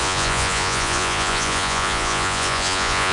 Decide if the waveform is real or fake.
fake